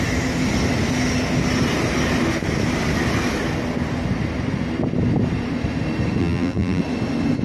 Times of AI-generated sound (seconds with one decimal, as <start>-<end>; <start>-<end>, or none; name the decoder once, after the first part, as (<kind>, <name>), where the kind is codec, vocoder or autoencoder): 6.2-6.8 (vocoder, BigVGAN v2)